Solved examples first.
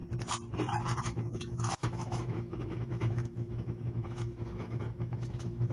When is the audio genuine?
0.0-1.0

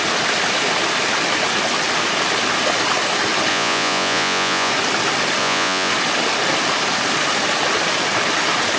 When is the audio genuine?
0.0-3.5; 4.7-5.4; 5.9-8.8